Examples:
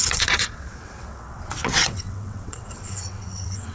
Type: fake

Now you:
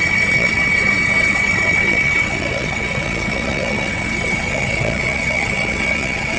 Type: fake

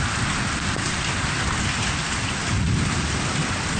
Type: real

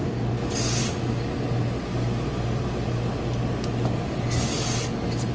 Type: real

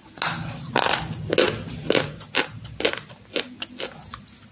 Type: real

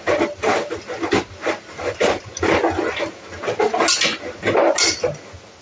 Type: real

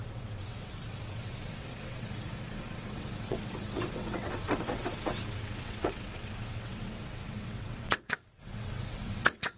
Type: fake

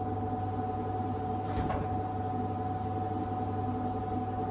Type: real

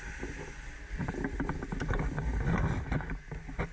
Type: real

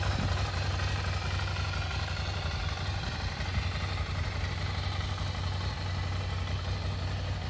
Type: real